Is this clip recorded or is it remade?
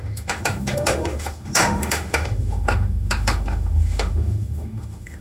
remade